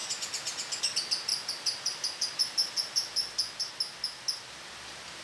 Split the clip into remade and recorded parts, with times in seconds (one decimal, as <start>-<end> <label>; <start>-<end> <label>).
0.0-5.2 recorded